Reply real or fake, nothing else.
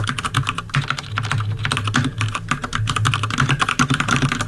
real